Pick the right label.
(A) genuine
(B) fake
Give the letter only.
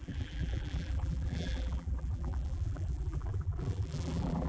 B